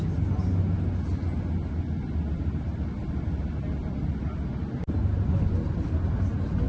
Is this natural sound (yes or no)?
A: yes